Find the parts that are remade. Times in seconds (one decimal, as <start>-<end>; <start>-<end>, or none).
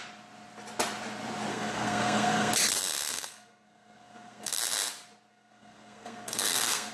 1.5-2.5; 3.1-4.6; 5.3-6.9